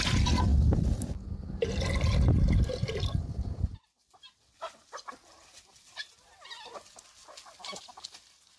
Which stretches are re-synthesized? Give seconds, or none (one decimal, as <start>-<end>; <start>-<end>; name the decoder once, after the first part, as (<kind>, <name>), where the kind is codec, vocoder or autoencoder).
none